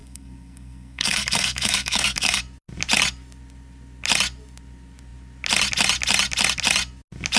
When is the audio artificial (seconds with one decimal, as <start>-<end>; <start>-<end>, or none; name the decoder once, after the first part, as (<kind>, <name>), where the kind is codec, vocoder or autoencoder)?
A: 0.0-2.4 (codec, SNAC)